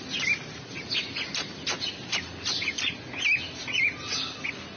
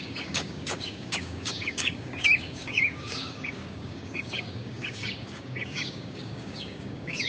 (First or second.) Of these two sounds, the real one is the first